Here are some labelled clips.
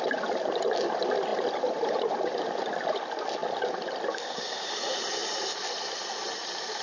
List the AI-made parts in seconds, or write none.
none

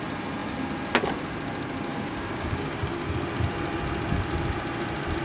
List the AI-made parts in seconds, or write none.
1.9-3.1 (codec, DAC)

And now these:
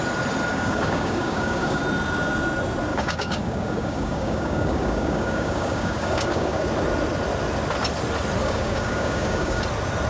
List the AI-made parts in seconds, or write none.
0.5-1.8 (codec, DAC); 2.9-6.7; 8.4-9.6

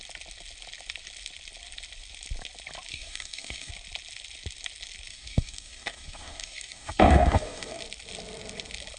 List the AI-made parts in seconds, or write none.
2.9-3.7 (codec, DAC); 5.1-7.8

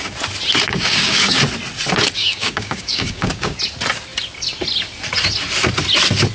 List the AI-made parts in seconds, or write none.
0.7-1.4 (codec, DAC); 2.2-3.6

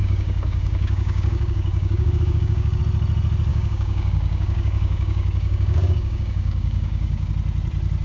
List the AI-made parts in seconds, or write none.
0.0-2.8 (codec, DAC); 3.5-7.3